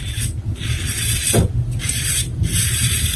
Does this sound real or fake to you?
fake